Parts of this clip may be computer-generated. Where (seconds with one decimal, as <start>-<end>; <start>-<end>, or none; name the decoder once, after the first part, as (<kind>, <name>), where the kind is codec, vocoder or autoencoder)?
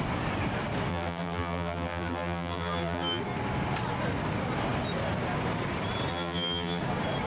0.9-3.2 (vocoder, BigVGAN v2); 6.1-6.8